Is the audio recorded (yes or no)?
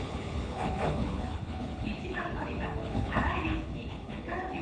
no